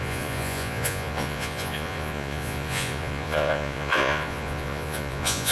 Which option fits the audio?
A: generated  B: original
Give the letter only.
A